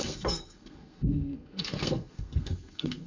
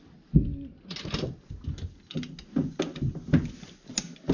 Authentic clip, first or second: second